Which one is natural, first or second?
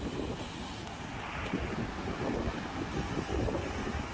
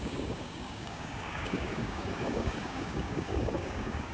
first